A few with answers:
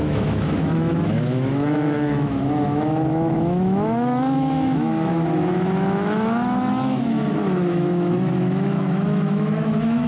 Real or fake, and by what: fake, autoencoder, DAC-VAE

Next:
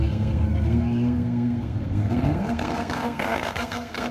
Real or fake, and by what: fake, codec, SNAC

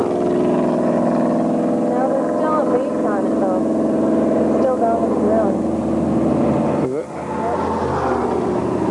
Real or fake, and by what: real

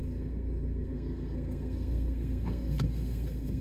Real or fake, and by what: fake, codec, SNAC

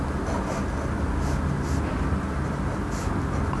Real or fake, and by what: real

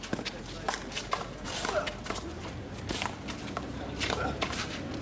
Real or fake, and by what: real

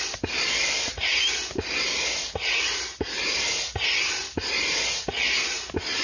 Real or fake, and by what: real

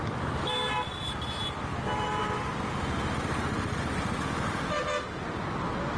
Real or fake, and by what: real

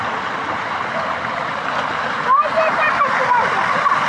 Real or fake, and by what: real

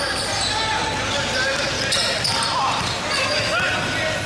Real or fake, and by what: real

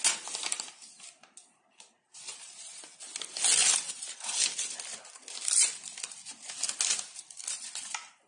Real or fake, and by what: real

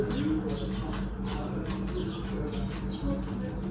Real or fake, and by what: real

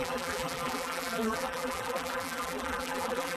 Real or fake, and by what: fake, vocoder, BigVGAN v2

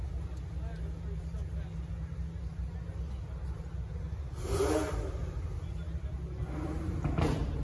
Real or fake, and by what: real